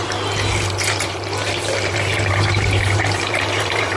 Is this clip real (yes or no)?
no